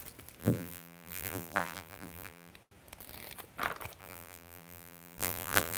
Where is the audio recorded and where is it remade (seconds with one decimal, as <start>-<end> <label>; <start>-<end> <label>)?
0.0-0.4 recorded; 0.4-2.5 remade; 2.5-4.0 recorded; 4.0-5.8 remade